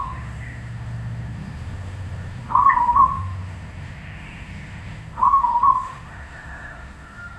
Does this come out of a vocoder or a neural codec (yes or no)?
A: yes